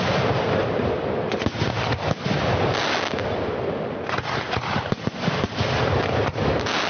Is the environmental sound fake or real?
real